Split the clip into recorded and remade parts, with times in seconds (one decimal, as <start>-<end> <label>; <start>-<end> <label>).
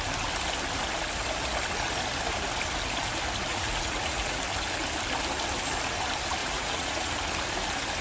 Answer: 0.0-3.5 recorded; 3.5-4.4 remade; 4.4-6.4 recorded; 6.4-7.1 remade; 7.1-8.0 recorded